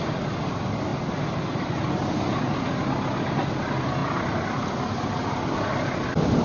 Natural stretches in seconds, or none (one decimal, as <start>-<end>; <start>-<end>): 0.0-6.4